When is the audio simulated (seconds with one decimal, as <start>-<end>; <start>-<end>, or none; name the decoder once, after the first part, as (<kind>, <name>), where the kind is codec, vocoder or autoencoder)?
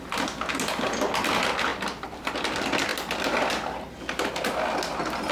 1.7-2.3 (vocoder, BigVGAN v2); 2.9-4.3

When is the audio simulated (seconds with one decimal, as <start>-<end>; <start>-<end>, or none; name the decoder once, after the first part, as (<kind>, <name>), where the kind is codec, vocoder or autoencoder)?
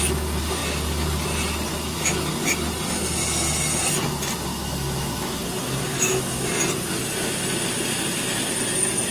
4.5-5.4 (autoencoder, DAC-VAE); 5.9-6.6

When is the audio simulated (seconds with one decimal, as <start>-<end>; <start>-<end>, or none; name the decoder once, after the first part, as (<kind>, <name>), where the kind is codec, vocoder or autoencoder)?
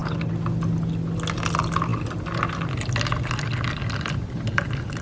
none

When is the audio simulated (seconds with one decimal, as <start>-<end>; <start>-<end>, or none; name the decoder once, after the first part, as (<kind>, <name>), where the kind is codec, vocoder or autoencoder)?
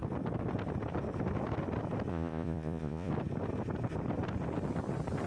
2.1-3.1 (vocoder, Vocos)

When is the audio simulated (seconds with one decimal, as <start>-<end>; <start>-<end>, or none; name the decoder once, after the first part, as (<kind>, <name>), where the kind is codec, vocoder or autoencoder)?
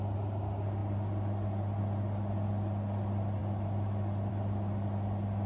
none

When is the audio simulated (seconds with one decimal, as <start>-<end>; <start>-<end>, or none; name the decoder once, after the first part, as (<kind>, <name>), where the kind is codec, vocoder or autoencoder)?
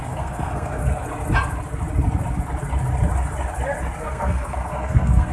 0.0-0.8 (codec, SNAC); 4.0-5.3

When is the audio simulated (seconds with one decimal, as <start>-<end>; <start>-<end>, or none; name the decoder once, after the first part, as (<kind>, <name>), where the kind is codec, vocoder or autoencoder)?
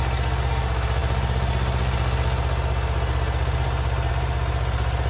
none